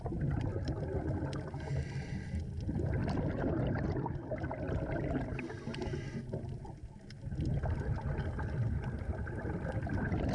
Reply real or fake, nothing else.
real